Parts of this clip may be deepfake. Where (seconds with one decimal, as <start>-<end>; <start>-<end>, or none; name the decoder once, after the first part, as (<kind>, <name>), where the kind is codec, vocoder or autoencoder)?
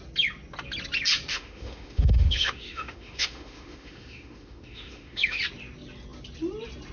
1.3-5.4 (autoencoder, DAC-VAE)